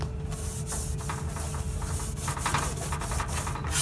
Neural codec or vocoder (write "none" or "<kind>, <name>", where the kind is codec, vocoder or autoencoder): none